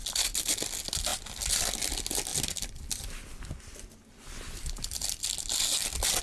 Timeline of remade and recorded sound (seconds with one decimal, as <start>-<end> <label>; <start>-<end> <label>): 0.0-0.5 remade; 0.5-6.2 recorded